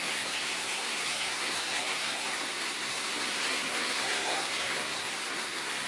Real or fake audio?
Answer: fake